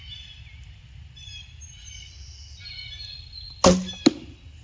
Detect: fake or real real